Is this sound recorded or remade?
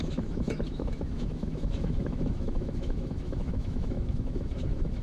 remade